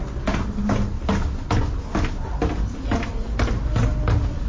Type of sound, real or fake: real